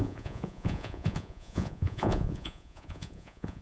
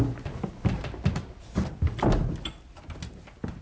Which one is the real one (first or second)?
second